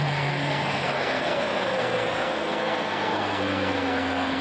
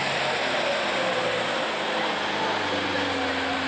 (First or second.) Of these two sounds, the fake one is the first